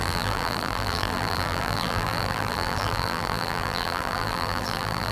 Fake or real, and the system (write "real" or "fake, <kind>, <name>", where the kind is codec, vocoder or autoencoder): fake, vocoder, BigVGAN v2